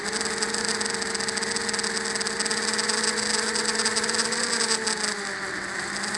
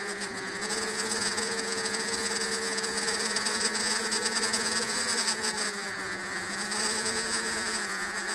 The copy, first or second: second